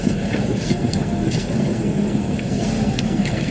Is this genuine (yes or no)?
no